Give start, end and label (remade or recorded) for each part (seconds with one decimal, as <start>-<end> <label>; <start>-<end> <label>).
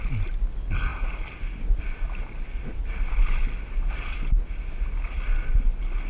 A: 0.0-6.1 recorded